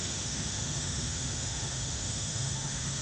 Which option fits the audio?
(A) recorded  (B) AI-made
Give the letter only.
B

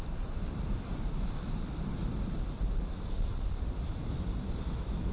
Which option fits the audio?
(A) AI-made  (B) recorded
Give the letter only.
A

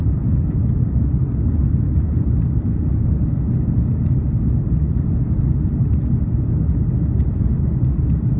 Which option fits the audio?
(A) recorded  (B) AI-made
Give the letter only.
A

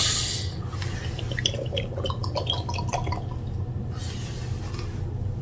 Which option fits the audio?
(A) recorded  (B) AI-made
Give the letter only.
A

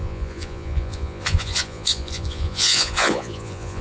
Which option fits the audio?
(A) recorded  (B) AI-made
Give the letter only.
B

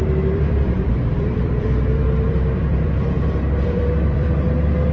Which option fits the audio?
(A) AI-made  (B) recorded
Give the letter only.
A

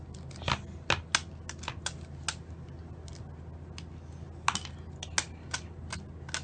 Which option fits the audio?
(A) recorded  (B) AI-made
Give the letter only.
A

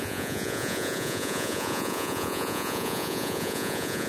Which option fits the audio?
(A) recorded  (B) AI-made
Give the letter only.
B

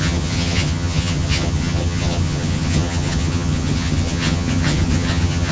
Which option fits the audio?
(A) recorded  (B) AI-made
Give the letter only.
B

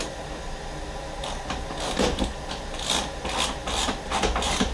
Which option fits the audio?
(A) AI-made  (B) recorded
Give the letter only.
B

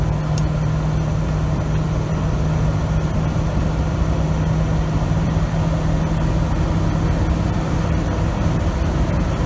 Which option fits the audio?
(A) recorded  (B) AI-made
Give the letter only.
A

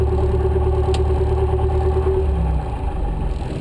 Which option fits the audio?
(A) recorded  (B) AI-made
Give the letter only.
A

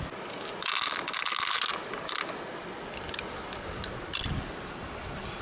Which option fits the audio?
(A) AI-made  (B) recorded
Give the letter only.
B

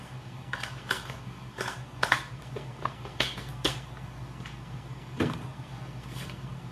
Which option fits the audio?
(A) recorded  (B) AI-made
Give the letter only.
B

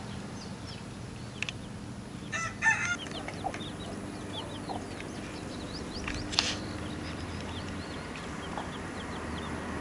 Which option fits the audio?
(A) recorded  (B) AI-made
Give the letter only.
A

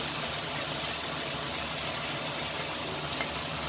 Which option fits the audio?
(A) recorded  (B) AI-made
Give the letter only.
A